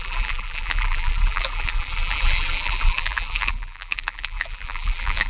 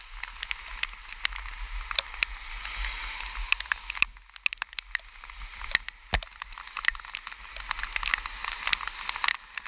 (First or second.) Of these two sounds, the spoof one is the first